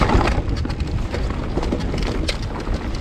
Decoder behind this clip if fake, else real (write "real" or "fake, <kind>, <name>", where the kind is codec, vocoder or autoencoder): real